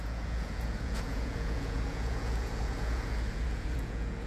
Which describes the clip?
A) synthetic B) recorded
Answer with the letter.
A